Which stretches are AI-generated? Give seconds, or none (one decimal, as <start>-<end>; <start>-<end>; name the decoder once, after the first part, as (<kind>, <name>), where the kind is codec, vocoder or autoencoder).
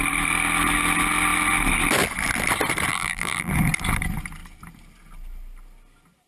2.9-3.5 (vocoder, BigVGAN v2)